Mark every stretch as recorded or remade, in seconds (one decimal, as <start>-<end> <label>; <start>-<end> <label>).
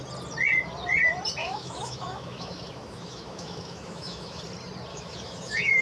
0.0-1.4 recorded; 1.4-4.4 remade; 4.4-4.9 recorded; 4.9-5.8 remade